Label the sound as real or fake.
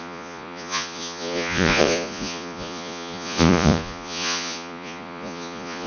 fake